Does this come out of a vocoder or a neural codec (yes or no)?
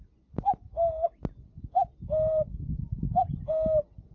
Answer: no